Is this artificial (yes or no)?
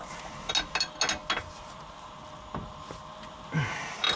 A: no